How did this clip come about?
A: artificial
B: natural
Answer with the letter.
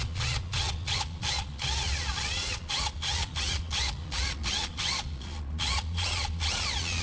A